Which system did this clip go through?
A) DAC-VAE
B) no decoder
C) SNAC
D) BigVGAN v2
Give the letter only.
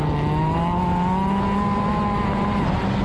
B